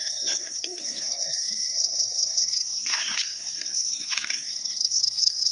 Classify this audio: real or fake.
fake